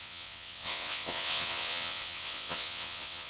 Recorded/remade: remade